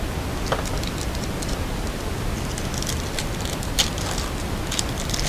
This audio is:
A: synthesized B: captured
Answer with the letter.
B